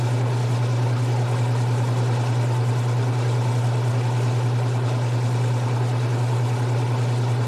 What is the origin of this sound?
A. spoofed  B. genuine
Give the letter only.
B